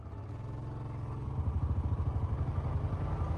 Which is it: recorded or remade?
recorded